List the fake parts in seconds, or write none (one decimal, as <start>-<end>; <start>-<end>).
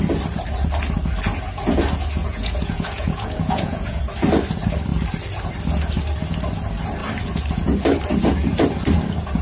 2.2-4.0